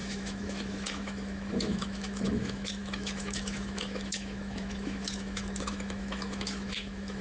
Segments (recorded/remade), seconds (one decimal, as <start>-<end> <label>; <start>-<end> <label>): 0.0-7.2 remade